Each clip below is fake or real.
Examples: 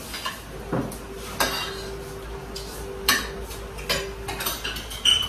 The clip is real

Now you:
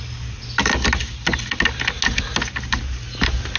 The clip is real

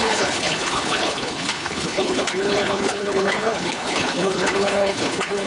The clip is fake